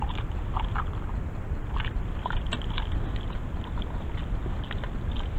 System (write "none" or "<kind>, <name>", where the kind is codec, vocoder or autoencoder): none